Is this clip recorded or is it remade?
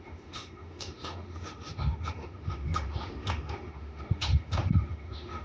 remade